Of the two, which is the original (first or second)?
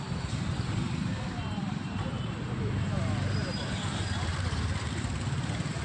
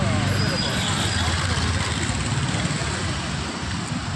second